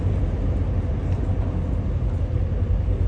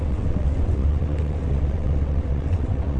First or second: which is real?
first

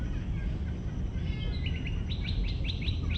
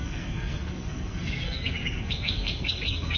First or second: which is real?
first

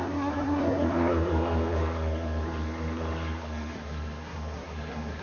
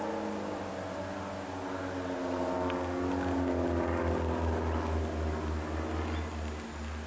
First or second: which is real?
second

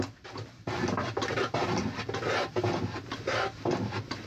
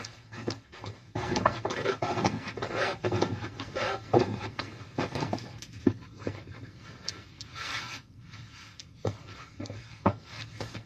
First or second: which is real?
first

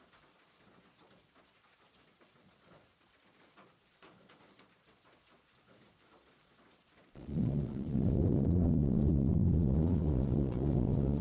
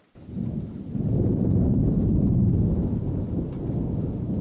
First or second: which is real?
second